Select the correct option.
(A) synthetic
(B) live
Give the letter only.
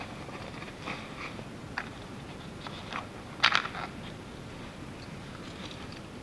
B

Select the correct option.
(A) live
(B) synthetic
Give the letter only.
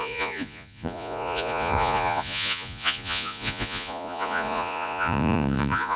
B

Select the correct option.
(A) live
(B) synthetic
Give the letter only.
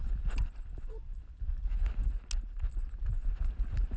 A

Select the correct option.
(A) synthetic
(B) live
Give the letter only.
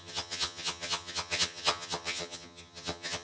A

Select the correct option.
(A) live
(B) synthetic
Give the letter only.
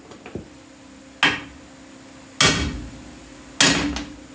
A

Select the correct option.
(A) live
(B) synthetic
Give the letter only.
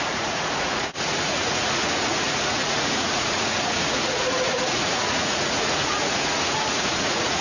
B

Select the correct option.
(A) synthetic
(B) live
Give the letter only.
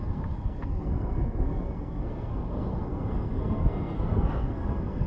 A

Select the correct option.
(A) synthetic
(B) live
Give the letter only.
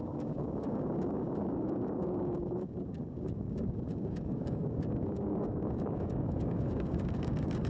A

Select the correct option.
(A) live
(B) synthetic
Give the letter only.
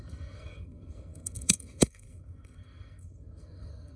B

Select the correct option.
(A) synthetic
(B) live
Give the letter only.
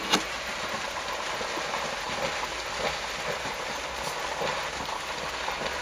B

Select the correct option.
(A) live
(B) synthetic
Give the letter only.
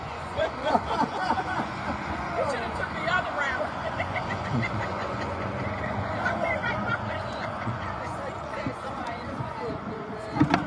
B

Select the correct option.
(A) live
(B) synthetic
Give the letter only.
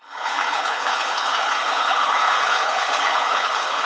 B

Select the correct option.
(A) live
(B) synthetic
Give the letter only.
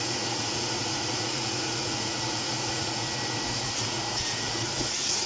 B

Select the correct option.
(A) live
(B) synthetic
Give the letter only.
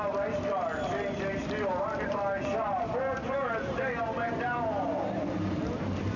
A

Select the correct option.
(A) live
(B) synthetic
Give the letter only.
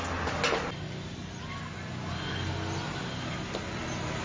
A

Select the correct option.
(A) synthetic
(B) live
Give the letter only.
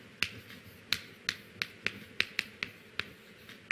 B